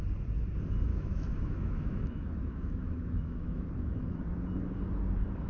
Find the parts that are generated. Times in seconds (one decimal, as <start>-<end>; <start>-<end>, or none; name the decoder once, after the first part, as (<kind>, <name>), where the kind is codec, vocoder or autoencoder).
0.9-4.2 (autoencoder, DAC-VAE)